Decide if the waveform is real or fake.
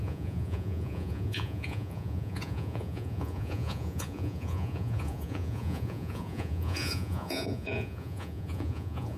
fake